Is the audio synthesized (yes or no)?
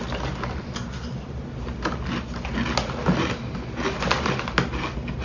no